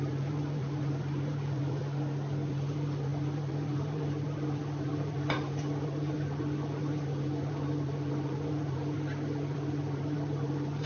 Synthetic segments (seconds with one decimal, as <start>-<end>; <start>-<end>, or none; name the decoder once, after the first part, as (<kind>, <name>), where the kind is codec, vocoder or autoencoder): 0.0-1.8 (vocoder, BigVGAN v2); 2.5-10.9